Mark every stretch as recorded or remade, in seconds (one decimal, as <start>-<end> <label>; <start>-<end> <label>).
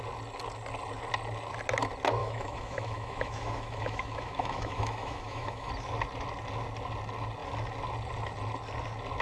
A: 0.0-2.2 recorded; 2.2-5.7 remade; 5.7-9.2 recorded